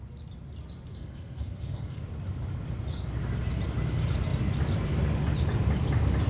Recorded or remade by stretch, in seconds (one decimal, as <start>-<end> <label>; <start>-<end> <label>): 0.0-0.9 recorded; 0.9-2.0 remade; 2.0-6.3 recorded